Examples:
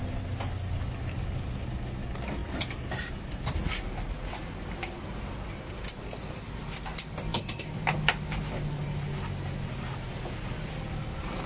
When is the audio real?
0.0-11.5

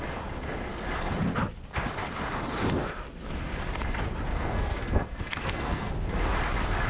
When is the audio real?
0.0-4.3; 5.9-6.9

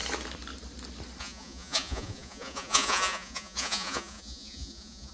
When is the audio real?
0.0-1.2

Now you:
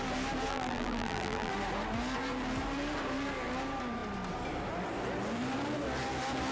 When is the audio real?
0.0-0.5; 1.5-6.5

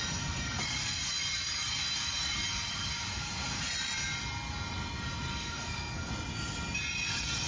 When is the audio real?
0.0-5.3; 6.1-7.5

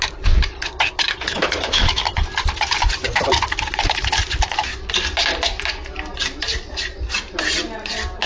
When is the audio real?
0.0-1.3; 2.0-8.3

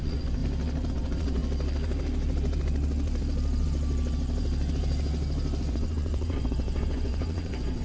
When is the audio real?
0.4-0.9; 1.4-5.7